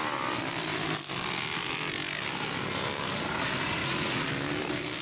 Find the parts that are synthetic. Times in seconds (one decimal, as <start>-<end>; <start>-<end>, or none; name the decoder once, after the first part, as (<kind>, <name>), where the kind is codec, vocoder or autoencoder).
3.8-4.3 (vocoder, Vocos)